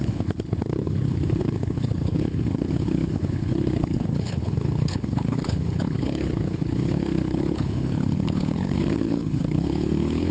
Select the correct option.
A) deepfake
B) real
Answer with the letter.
A